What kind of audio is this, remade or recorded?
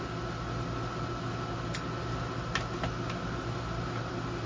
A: recorded